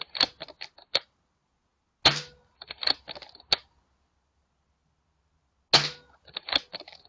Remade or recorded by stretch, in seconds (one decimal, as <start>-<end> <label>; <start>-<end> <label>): 0.0-7.1 recorded